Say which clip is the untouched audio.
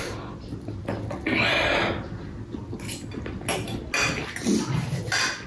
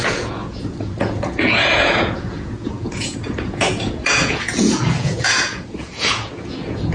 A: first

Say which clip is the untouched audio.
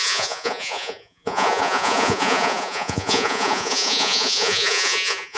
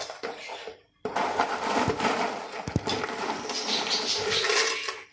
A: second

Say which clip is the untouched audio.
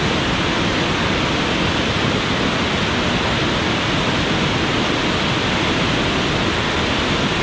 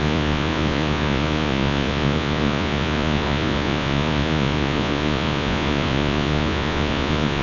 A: first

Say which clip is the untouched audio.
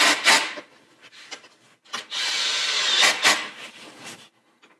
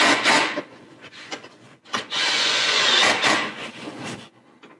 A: first